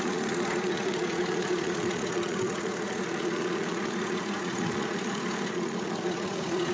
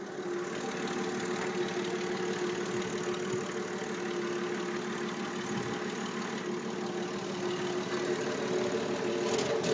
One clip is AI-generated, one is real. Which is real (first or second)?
second